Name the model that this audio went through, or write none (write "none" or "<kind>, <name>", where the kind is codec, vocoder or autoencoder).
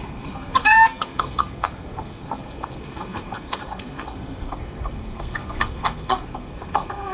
codec, SNAC